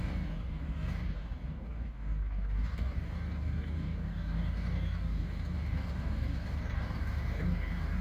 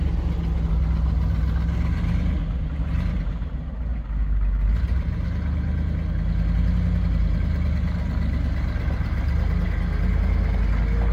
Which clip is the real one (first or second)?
second